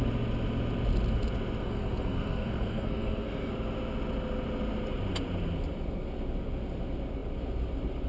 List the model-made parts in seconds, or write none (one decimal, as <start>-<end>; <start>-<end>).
1.6-3.5